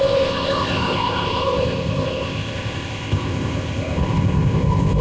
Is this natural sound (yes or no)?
no